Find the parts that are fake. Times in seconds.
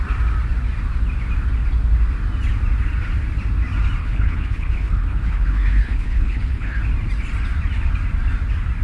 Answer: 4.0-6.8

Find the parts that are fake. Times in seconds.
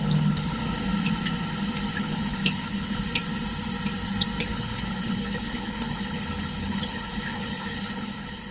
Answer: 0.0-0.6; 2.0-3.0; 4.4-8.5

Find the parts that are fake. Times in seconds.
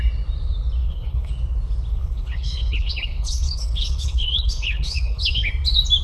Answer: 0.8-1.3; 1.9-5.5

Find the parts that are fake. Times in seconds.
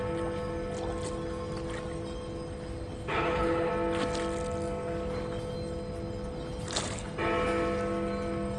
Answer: 3.1-3.7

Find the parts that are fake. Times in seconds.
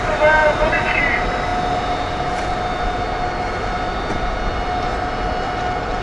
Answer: none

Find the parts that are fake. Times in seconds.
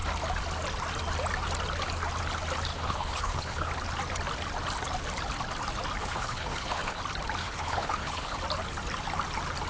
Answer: 2.7-3.7; 6.0-7.0; 7.4-8.4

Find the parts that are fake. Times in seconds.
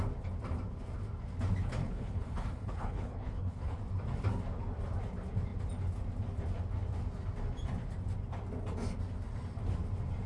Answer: 1.8-3.8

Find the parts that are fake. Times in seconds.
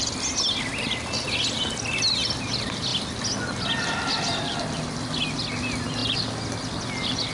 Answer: none